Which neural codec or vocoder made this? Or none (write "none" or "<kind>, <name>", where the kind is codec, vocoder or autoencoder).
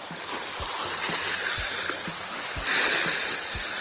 none